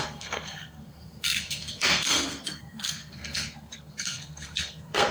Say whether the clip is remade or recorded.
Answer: remade